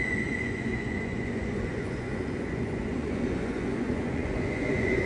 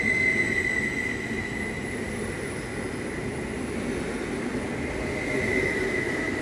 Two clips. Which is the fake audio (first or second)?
first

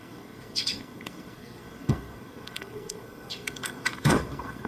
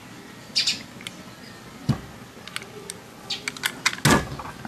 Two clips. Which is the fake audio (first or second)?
first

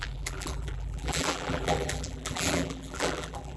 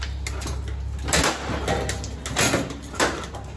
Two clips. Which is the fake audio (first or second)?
first